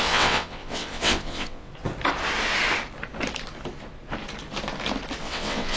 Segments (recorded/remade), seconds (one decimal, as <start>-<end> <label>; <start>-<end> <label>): 0.0-1.7 remade; 1.7-5.2 recorded; 5.2-5.8 remade